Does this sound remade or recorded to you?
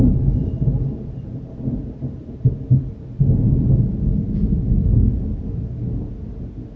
recorded